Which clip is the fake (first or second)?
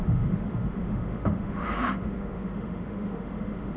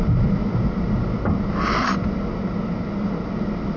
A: first